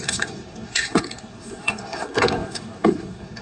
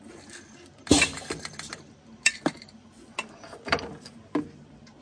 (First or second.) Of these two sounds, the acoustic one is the second